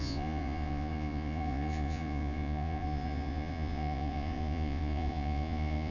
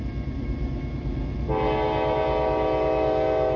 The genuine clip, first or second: second